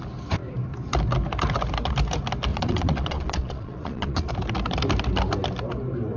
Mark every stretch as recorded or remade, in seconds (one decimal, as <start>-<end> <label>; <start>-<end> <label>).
0.0-2.5 recorded; 2.5-4.3 remade; 4.3-6.2 recorded